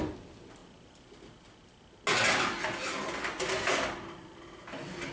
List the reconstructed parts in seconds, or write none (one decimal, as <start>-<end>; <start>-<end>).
none